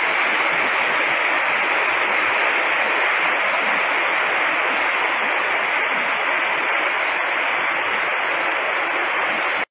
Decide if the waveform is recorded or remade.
recorded